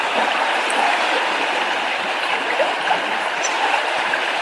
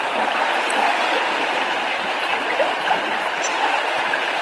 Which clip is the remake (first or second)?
first